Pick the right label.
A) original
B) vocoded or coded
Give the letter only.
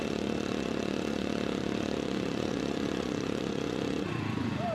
B